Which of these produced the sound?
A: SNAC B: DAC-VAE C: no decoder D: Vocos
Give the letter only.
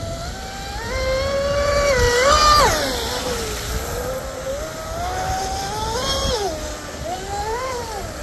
C